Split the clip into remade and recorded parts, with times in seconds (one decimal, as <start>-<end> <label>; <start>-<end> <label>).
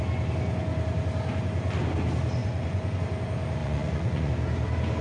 0.0-2.4 recorded; 2.4-3.0 remade; 3.0-3.6 recorded; 3.6-4.3 remade; 4.3-5.0 recorded